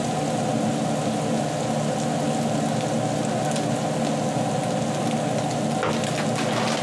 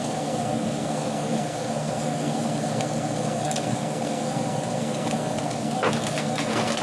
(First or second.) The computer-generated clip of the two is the second